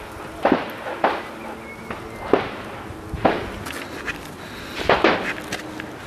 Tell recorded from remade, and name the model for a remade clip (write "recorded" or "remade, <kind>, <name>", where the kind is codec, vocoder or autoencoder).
recorded